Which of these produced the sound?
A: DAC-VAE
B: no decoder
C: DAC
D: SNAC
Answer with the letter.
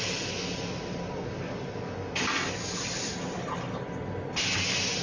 B